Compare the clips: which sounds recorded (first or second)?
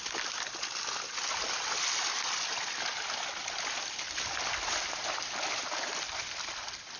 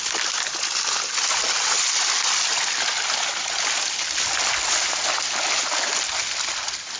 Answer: second